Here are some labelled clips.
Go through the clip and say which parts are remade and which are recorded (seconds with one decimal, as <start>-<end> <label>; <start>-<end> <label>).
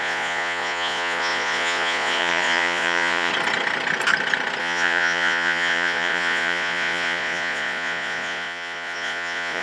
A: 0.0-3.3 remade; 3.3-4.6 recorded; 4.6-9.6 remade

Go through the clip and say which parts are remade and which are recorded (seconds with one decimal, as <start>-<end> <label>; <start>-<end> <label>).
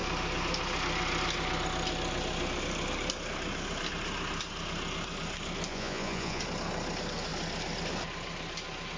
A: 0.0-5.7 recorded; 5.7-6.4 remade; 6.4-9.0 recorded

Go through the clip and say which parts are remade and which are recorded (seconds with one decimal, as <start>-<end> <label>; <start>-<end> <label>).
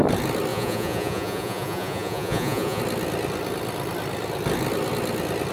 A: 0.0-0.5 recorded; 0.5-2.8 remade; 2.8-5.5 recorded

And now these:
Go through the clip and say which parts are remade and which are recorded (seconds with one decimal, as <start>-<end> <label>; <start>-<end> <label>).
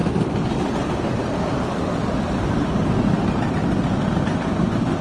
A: 0.0-5.0 recorded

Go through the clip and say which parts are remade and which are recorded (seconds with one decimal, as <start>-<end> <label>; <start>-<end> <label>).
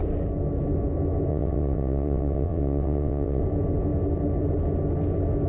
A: 0.0-1.3 recorded; 1.3-3.4 remade; 3.4-5.5 recorded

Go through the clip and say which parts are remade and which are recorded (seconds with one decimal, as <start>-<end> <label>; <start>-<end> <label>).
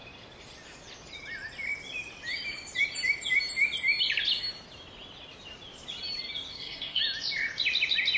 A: 0.0-6.5 recorded; 6.5-7.0 remade; 7.0-8.2 recorded